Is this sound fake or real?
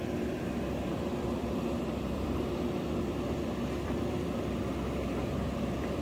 fake